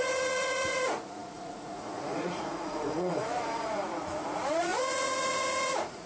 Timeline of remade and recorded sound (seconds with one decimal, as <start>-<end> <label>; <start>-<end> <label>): 0.0-6.1 remade